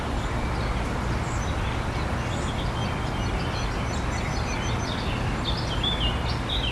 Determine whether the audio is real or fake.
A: real